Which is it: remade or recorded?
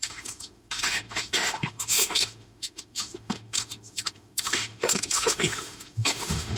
remade